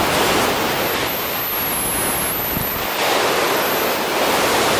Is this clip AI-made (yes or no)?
no